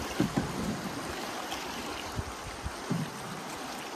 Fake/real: real